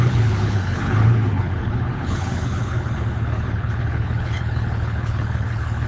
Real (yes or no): no